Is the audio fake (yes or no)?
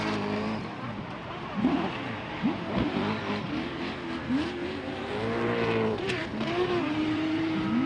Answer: yes